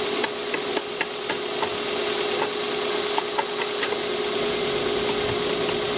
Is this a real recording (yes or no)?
yes